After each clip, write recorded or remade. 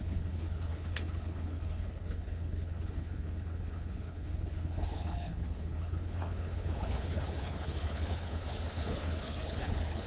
remade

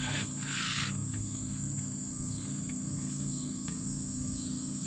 remade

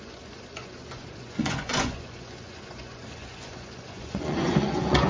remade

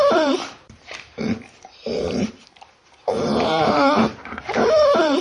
remade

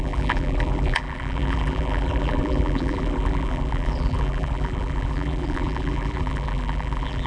remade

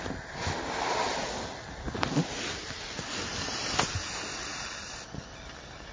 recorded